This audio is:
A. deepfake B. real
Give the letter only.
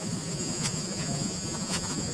A